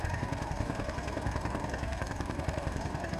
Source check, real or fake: fake